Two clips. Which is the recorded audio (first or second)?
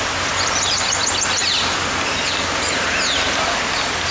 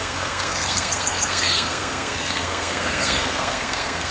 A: first